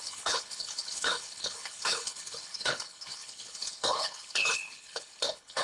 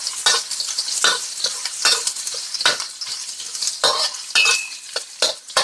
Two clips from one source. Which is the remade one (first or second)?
first